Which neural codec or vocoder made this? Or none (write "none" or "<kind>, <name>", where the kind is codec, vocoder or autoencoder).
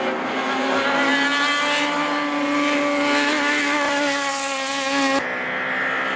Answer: none